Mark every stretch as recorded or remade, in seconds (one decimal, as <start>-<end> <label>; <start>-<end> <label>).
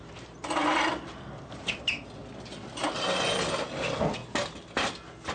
0.0-5.3 recorded